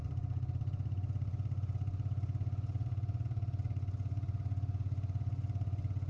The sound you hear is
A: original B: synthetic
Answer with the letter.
B